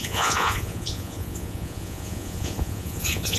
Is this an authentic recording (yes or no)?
no